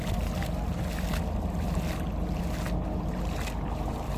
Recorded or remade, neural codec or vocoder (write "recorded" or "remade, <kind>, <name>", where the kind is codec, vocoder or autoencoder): recorded